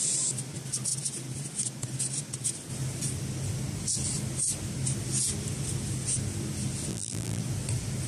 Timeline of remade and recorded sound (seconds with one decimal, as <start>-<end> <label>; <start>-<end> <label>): 0.0-6.9 recorded; 6.9-7.4 remade; 7.4-8.1 recorded

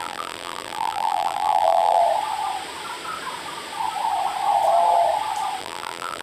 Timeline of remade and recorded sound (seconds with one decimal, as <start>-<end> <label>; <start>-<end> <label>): 0.0-2.0 remade; 2.0-5.6 recorded; 5.6-6.2 remade

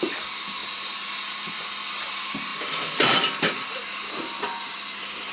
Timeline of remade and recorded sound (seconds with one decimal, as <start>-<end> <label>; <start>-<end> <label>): 0.0-0.6 remade; 0.6-2.1 recorded; 2.1-2.5 remade; 2.5-3.4 recorded; 3.4-3.8 remade; 3.8-4.7 recorded; 4.7-5.3 remade

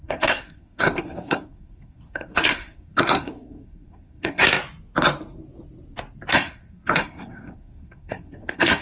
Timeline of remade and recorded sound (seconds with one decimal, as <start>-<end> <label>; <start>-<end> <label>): 0.0-4.4 remade; 4.4-6.3 recorded; 6.3-8.8 remade